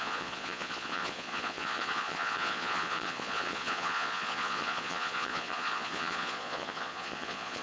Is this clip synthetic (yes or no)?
yes